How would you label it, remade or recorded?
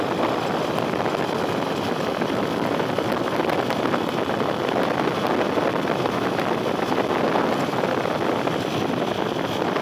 recorded